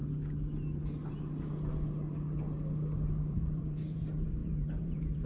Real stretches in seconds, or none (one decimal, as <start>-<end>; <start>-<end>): 0.0-3.2

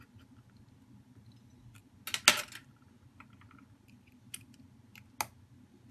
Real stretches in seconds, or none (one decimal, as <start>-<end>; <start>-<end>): 0.0-5.9